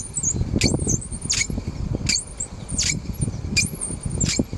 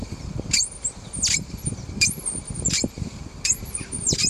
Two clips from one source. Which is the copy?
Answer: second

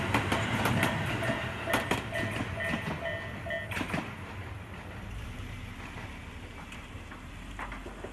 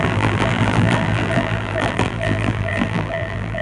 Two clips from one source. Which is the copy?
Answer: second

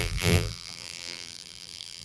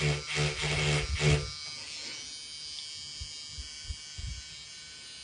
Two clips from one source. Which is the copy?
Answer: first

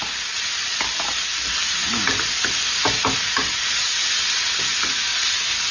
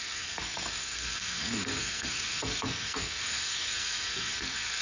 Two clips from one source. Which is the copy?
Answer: second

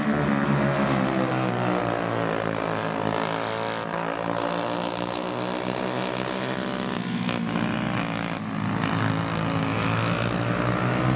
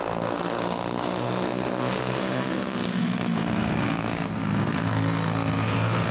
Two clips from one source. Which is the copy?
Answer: second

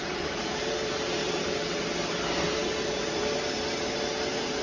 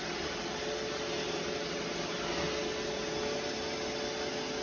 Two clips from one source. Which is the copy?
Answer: first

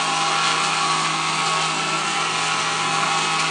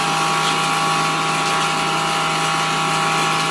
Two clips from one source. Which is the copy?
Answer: first